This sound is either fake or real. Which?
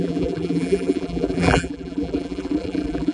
fake